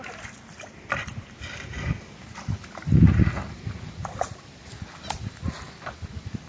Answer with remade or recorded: recorded